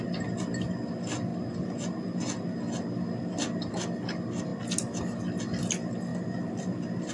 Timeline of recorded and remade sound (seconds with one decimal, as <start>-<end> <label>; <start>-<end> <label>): 0.0-7.1 recorded